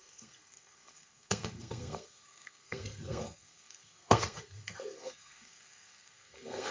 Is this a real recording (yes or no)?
no